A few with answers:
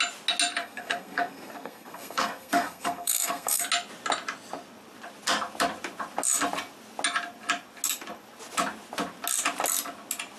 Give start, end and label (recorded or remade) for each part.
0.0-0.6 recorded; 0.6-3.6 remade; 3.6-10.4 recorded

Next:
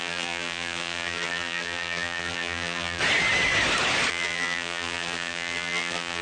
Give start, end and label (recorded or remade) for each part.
0.0-3.0 remade; 3.0-4.1 recorded; 4.1-6.2 remade

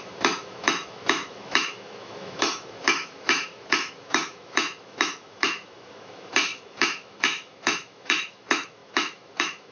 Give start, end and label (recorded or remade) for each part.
0.0-9.7 remade